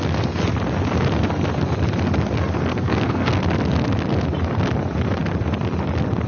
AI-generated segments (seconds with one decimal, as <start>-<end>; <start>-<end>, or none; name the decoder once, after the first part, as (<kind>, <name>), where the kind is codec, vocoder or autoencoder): 2.7-3.3 (codec, SNAC)